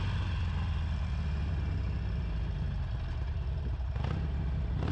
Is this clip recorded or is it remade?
recorded